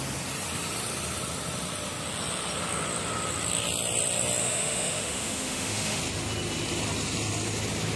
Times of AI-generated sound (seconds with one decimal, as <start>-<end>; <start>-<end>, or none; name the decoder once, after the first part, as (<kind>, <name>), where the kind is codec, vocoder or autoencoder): 4.4-6.0 (autoencoder, DAC-VAE)